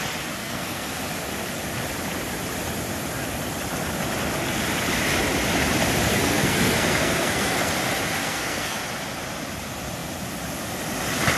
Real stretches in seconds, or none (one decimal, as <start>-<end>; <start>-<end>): 0.0-0.4; 1.0-6.1; 7.7-8.2; 8.8-11.4